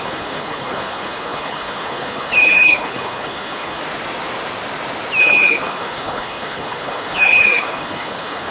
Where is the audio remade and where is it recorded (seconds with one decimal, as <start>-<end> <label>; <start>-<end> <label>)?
0.0-3.8 remade; 3.8-5.2 recorded; 5.2-8.5 remade